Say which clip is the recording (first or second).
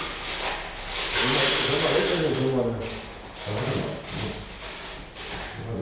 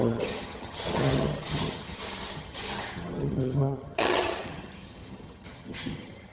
first